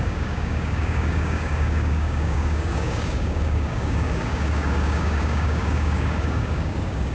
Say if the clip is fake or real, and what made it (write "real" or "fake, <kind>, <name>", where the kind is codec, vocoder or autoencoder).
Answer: fake, codec, DAC